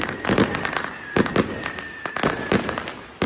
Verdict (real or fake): real